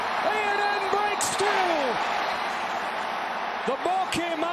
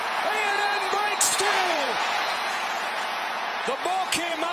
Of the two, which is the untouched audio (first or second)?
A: first